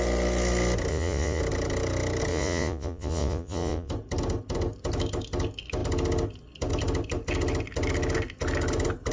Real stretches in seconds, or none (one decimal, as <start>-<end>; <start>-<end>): 0.0-0.9; 1.4-2.3; 3.9-9.1